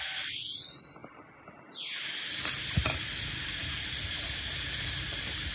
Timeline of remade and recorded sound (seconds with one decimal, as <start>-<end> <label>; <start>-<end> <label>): 0.0-2.8 recorded; 2.8-4.0 remade; 4.0-5.5 recorded